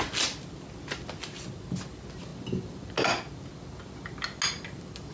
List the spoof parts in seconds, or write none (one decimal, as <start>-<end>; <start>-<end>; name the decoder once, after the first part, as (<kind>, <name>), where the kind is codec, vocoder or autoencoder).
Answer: none

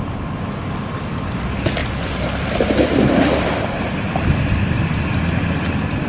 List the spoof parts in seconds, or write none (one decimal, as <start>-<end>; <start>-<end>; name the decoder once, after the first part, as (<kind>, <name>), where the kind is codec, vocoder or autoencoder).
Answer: 1.8-5.2 (vocoder, BigVGAN v2)

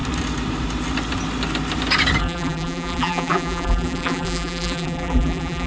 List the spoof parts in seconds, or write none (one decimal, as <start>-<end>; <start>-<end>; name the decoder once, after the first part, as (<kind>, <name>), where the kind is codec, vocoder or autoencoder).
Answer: 2.2-5.7 (vocoder, BigVGAN v2)